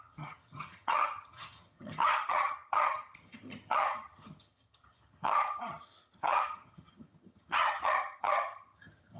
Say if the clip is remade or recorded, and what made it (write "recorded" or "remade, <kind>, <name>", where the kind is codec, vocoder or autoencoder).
remade, vocoder, HiFi-GAN